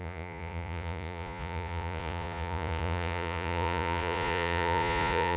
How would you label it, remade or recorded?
remade